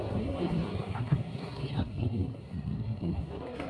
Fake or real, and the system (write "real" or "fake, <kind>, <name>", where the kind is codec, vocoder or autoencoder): fake, codec, SNAC